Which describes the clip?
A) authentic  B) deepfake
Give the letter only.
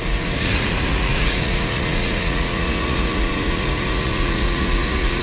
B